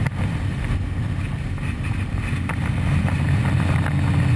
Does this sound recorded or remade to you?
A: recorded